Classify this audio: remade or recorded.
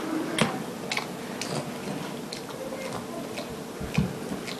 recorded